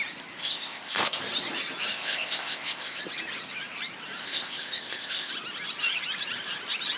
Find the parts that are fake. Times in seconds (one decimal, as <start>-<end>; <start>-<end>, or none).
0.4-1.2; 1.9-3.0; 4.2-5.3